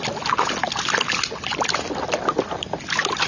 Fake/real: real